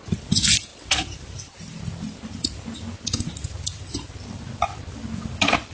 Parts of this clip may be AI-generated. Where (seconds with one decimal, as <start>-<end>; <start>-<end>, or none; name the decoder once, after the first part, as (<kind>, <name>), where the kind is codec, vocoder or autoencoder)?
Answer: none